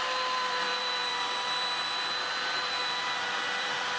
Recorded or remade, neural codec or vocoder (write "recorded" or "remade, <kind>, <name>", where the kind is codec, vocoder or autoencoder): remade, vocoder, BigVGAN v2